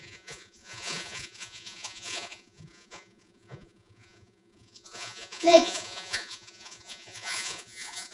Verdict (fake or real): fake